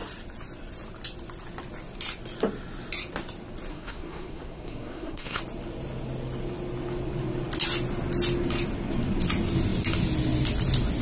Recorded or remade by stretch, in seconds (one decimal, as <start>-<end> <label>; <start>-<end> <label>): 0.0-3.7 recorded; 3.7-5.4 remade; 5.4-11.0 recorded